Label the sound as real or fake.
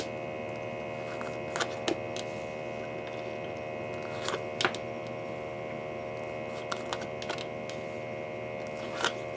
real